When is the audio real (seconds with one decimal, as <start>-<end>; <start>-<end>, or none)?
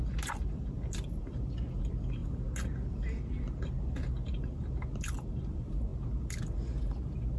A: 0.0-7.4